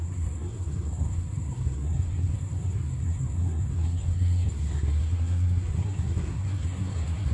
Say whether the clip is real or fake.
fake